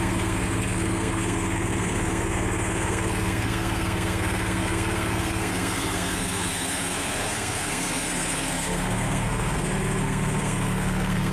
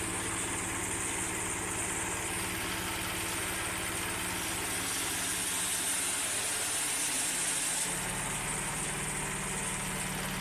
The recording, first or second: second